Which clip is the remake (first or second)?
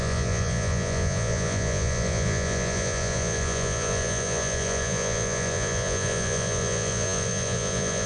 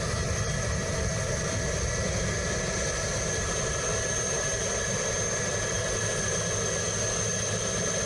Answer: first